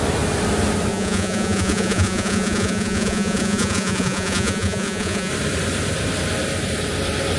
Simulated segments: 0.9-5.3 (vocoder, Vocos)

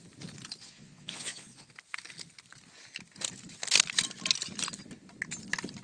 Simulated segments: 0.6-1.7 (vocoder, Vocos)

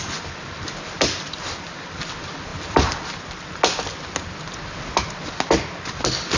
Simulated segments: none